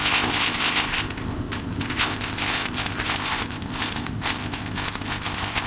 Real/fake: fake